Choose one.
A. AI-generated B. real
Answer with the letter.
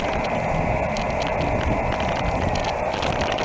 B